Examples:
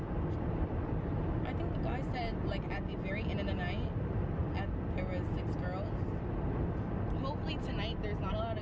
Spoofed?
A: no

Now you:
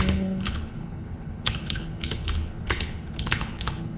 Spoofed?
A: yes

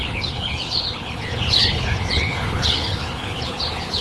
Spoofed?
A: yes